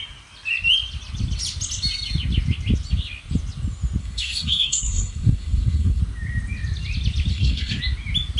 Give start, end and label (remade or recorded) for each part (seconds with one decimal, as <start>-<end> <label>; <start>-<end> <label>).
0.0-4.0 recorded; 4.0-6.0 remade; 6.0-7.3 recorded; 7.3-7.8 remade; 7.8-8.4 recorded